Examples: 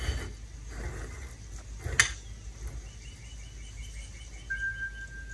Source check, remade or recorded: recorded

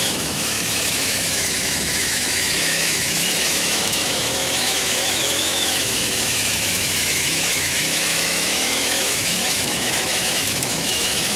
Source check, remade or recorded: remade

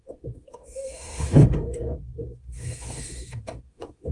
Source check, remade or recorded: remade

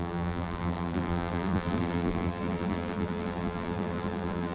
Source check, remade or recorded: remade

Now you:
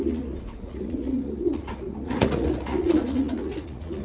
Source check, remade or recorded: remade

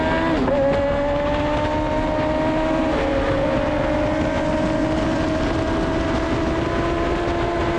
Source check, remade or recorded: recorded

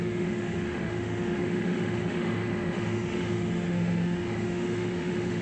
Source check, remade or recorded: remade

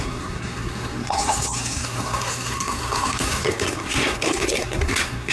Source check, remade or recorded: remade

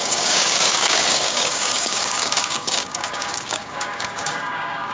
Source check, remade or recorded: remade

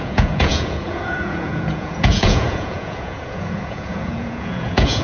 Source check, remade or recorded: remade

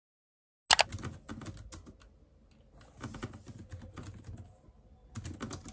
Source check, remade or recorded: recorded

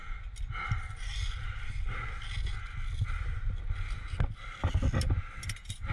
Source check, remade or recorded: recorded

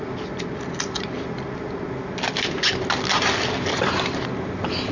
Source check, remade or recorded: recorded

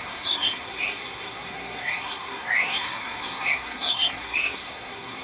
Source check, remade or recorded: remade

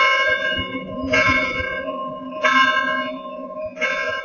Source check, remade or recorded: remade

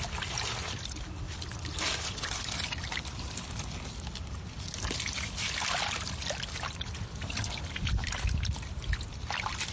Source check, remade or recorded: recorded